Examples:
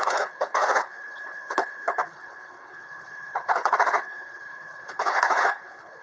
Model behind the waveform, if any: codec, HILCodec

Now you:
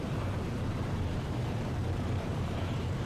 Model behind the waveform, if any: vocoder, BigVGAN v2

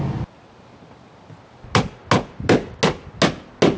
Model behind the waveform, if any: none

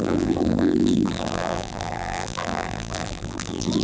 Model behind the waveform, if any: vocoder, BigVGAN v2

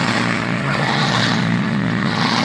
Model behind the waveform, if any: vocoder, Vocos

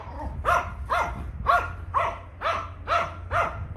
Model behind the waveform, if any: none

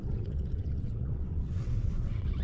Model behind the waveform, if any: vocoder, WaveNeXt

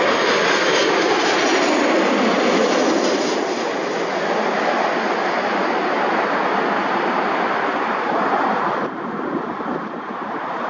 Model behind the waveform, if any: none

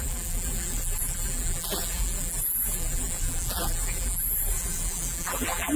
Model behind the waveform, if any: vocoder, BigVGAN v2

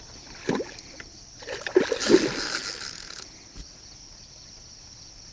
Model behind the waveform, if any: none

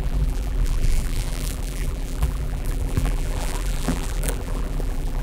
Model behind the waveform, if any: vocoder, BigVGAN v2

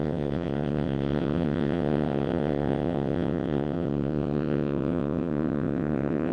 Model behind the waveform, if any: vocoder, WaveNeXt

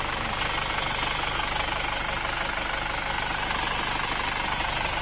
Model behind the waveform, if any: none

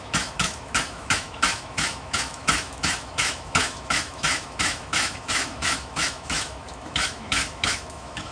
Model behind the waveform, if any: autoencoder, DAC-VAE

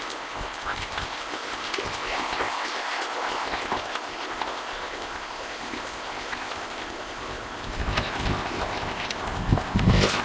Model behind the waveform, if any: codec, ZipCodec